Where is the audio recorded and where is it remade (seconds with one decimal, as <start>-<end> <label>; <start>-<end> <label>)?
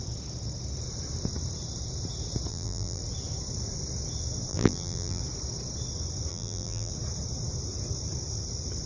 0.0-2.5 recorded; 2.5-3.0 remade; 3.0-4.5 recorded; 4.5-5.2 remade; 5.2-6.3 recorded; 6.3-6.9 remade; 6.9-8.9 recorded